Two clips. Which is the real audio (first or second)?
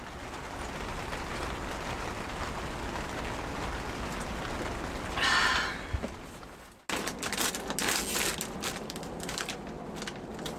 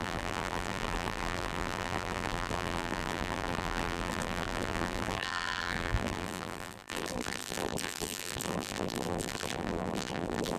first